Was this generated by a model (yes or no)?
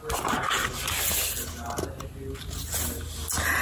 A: no